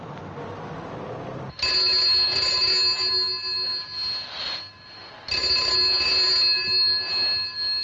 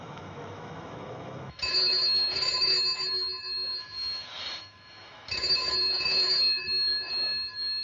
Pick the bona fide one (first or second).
first